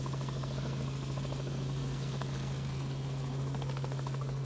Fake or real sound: fake